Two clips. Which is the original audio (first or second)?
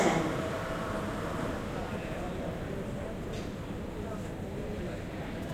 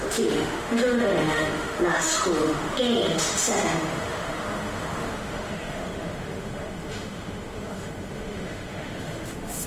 first